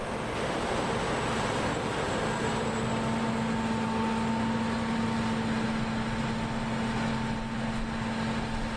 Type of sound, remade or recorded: recorded